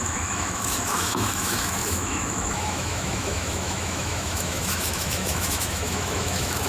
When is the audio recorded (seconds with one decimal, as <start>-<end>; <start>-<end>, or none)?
none